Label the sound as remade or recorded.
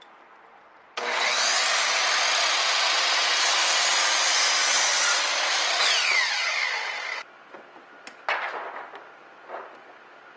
recorded